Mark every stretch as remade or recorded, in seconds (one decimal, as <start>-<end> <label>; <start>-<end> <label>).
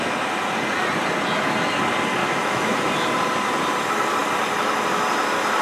0.0-2.2 recorded; 2.2-2.8 remade; 2.8-5.6 recorded